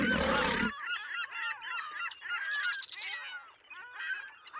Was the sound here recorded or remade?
recorded